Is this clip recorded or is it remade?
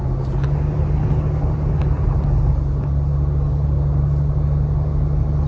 recorded